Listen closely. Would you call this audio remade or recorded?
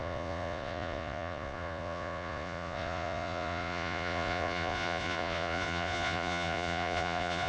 remade